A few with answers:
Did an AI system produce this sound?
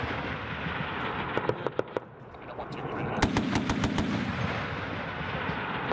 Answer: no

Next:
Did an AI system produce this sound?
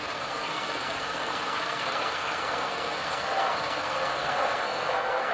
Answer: yes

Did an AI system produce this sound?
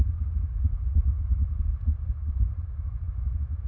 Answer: no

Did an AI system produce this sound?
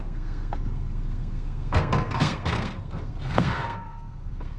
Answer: yes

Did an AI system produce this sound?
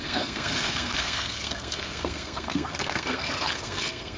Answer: yes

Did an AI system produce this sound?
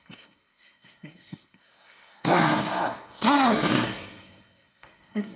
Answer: yes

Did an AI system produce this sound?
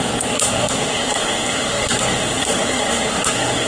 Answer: yes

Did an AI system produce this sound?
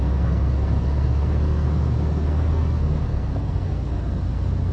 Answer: yes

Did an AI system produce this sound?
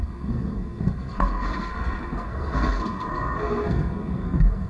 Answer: yes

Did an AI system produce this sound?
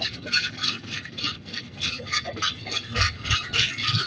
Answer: yes